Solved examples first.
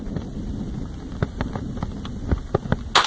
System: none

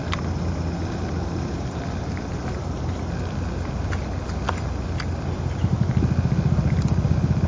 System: none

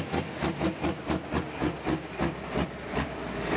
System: none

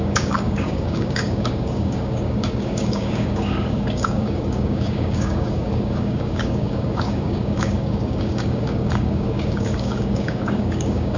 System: codec, DAC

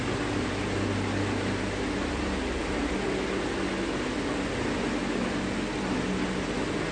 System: none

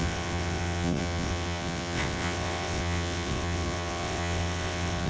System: vocoder, WaveNeXt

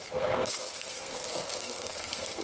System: codec, SNAC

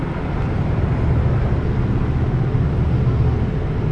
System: none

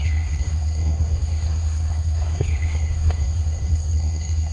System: codec, SNAC